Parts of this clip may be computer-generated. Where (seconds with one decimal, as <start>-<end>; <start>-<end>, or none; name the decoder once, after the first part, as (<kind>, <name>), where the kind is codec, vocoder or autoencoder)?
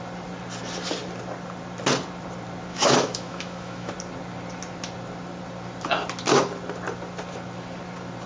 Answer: 2.7-3.9 (autoencoder, DAC-VAE)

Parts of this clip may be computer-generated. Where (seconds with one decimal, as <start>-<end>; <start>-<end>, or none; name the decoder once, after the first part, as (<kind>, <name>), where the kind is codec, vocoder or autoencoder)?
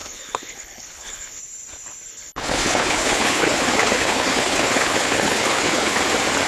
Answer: 0.0-1.4 (codec, HILCodec); 2.1-6.0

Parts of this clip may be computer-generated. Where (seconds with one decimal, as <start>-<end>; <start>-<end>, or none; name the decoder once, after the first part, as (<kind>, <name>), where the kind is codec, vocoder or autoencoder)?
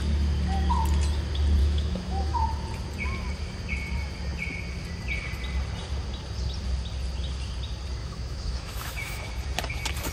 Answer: 1.6-2.4 (autoencoder, DAC-VAE); 8.0-9.3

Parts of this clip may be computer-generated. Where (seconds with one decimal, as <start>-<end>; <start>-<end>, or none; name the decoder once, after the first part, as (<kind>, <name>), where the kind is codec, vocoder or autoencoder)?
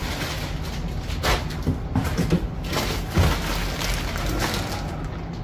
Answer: 0.0-1.2 (vocoder, BigVGAN v2)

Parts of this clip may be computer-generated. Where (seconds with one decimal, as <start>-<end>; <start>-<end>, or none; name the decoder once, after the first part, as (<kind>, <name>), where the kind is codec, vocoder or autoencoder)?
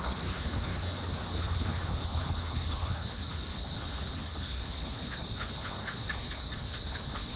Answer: 0.0-7.4 (codec, HILCodec)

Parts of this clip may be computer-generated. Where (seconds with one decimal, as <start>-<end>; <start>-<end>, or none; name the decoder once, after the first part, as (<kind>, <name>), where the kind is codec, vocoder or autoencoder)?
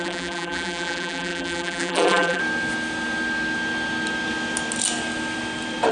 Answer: 0.0-2.4 (vocoder, BigVGAN v2)